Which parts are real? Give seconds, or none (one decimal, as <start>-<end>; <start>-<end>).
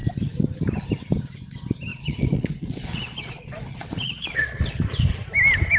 0.0-1.9; 4.8-5.8